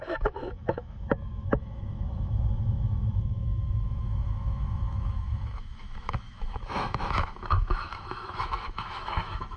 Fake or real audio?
fake